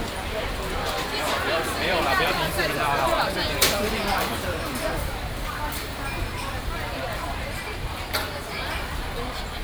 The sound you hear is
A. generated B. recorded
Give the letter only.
A